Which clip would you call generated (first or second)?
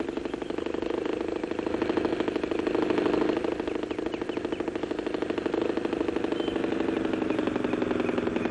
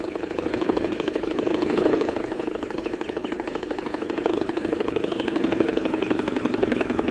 second